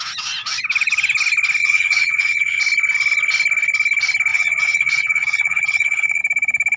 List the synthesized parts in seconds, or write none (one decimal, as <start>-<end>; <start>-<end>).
1.6-2.6; 4.3-6.2